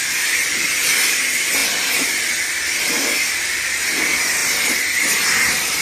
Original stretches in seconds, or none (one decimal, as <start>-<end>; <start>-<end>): 0.0-5.8